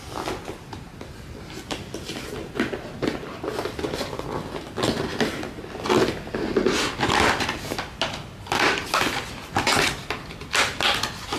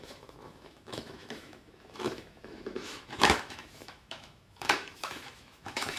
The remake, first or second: second